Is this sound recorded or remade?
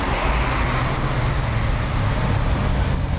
recorded